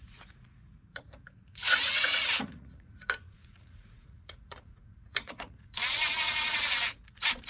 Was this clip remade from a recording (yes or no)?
yes